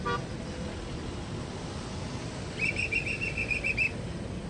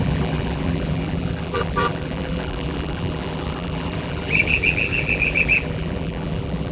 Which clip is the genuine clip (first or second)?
first